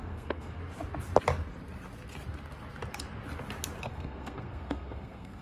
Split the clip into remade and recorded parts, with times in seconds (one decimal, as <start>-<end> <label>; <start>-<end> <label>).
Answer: 0.0-0.6 remade; 0.6-3.8 recorded; 3.8-5.4 remade

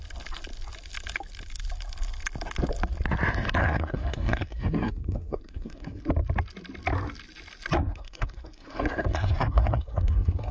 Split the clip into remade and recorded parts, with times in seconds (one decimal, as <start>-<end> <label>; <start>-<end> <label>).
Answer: 0.0-3.6 recorded; 3.6-6.0 remade; 6.0-7.8 recorded; 7.8-10.5 remade

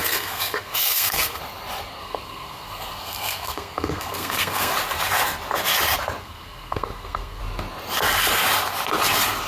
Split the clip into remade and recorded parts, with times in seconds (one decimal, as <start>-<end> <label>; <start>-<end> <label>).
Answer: 0.0-1.4 remade; 1.4-2.0 recorded; 2.0-4.7 remade; 4.7-6.2 recorded; 6.2-7.4 remade; 7.4-9.5 recorded

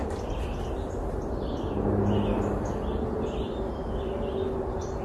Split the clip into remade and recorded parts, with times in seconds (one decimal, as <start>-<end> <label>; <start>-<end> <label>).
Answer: 0.0-5.0 recorded